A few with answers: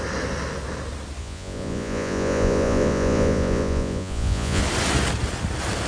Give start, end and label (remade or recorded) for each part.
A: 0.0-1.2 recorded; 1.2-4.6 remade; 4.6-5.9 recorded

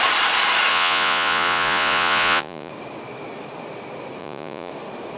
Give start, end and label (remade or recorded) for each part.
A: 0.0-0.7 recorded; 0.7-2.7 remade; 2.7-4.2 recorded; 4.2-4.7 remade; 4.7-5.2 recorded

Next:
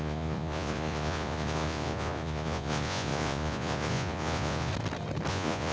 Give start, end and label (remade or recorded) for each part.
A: 0.0-4.7 remade; 4.7-5.3 recorded; 5.3-5.7 remade